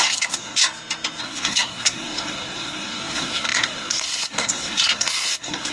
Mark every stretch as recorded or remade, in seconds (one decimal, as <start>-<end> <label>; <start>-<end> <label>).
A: 0.0-0.6 remade; 0.6-1.2 recorded; 1.2-5.7 remade